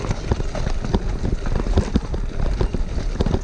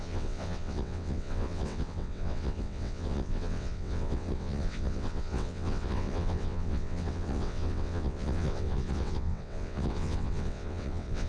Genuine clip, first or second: first